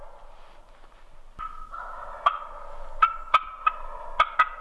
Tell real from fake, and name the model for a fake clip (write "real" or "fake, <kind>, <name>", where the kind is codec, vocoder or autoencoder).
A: real